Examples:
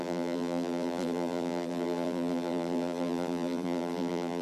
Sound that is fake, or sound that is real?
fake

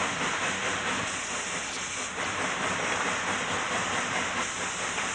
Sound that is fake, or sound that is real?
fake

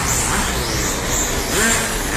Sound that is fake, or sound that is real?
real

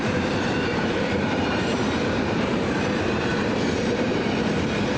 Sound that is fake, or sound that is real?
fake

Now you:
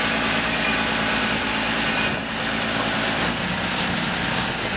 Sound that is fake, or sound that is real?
real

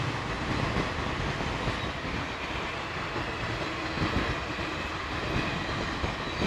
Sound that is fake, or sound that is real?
real